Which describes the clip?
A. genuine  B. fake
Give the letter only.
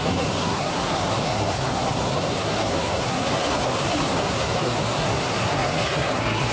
B